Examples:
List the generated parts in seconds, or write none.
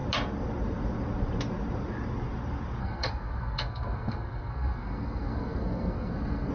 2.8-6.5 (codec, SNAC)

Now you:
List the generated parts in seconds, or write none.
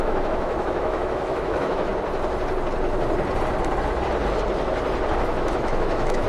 0.0-1.9 (autoencoder, DAC-VAE); 5.3-6.3